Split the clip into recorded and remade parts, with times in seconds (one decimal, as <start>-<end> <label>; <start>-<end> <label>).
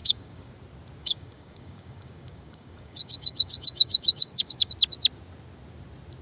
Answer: 0.0-0.5 remade; 0.5-1.0 recorded; 1.0-4.7 remade; 4.7-6.2 recorded